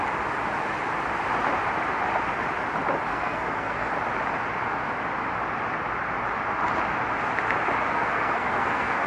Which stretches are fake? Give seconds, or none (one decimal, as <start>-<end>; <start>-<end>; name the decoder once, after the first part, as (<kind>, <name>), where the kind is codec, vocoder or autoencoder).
3.1-3.9 (codec, SNAC); 7.9-9.1